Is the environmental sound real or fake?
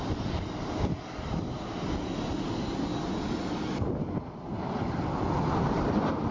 real